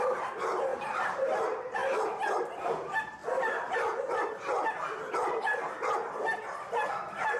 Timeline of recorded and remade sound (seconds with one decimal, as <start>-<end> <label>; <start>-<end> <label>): 0.0-7.4 recorded